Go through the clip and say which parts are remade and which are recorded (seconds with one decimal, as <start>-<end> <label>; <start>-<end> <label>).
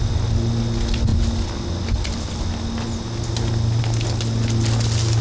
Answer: 0.0-5.2 recorded